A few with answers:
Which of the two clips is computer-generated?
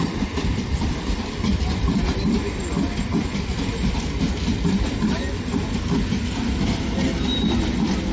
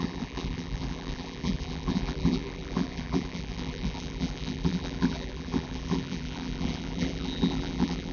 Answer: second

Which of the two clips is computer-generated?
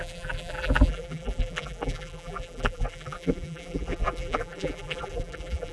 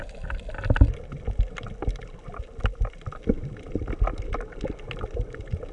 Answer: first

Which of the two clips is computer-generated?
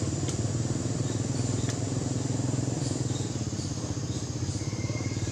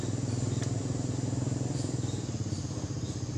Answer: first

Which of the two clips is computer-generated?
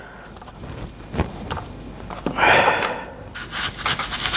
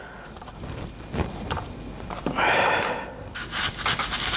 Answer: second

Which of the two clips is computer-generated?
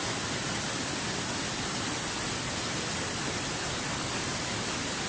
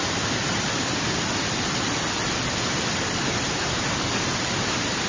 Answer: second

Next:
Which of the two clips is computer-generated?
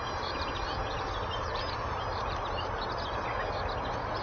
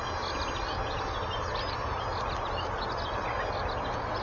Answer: first